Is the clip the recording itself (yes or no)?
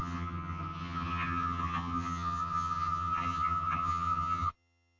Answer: no